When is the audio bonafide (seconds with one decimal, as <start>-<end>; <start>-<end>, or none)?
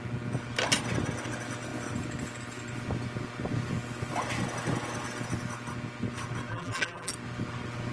0.0-6.5; 7.1-7.9